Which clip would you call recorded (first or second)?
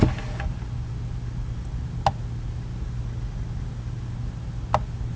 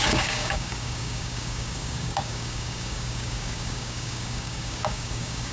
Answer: first